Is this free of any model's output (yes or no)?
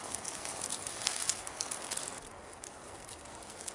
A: no